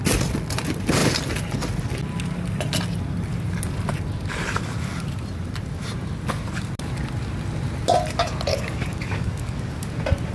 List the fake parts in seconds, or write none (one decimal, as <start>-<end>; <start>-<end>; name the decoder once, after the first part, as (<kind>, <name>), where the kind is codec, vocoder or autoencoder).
8.5-9.7 (codec, DAC)